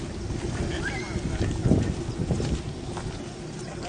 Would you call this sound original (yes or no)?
yes